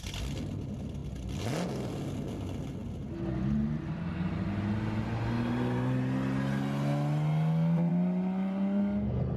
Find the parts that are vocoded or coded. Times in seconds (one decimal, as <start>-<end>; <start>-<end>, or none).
none